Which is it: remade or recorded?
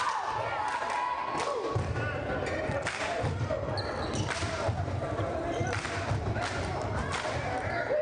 recorded